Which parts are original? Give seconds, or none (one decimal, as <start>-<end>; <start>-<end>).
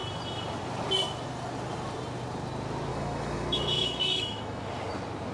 0.0-2.9; 4.6-5.3